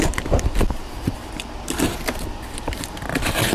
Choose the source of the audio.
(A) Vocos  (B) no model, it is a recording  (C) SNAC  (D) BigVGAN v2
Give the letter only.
D